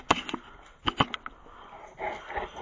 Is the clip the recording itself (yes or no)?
yes